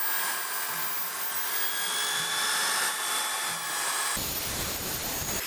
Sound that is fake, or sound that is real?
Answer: real